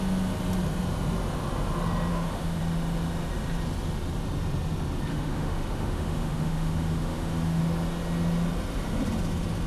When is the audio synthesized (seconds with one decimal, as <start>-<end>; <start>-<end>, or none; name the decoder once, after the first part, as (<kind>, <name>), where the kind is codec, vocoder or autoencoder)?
2.1-2.6 (autoencoder, DAC-VAE); 5.1-7.6